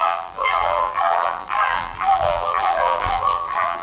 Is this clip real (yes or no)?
no